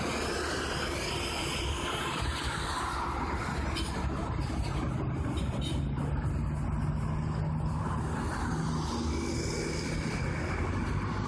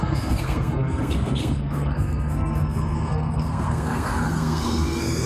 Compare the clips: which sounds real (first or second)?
first